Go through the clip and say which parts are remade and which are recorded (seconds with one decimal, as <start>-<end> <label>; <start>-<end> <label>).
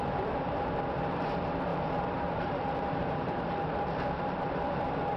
0.0-1.7 recorded; 1.7-4.4 remade; 4.4-5.2 recorded